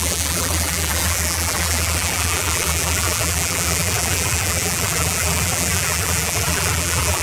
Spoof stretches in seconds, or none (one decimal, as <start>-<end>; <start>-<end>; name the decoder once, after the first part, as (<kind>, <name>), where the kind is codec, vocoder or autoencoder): 0.0-7.2 (vocoder, BigVGAN v2)